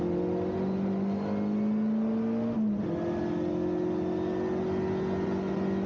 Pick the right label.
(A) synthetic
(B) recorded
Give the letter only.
B